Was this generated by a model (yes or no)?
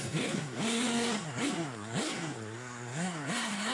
yes